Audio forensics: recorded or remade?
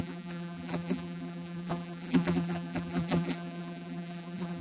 remade